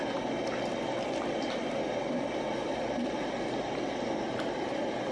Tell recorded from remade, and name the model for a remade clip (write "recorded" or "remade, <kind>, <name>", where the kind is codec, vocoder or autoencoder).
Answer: recorded